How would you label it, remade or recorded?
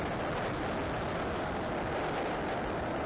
recorded